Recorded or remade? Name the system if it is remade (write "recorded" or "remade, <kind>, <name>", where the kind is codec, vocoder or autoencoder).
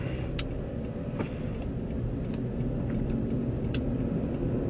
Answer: recorded